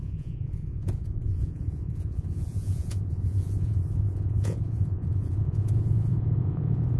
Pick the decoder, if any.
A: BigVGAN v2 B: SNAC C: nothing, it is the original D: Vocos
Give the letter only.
D